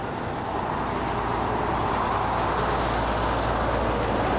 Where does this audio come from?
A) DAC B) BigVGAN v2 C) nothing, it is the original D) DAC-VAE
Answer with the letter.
C